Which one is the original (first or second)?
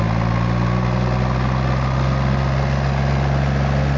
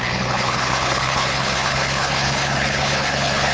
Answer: first